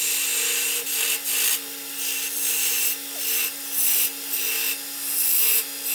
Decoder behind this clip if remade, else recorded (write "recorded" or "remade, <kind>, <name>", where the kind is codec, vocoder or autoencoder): recorded